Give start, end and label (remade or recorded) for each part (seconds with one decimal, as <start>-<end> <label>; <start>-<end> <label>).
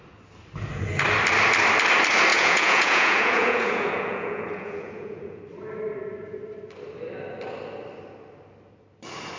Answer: 0.0-2.3 recorded; 2.3-5.4 remade; 5.4-9.4 recorded